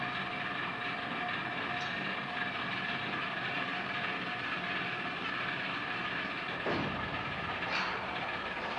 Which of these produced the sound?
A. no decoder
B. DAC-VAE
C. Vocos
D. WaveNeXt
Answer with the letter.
A